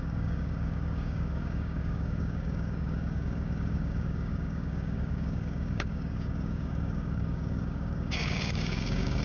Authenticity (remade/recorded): remade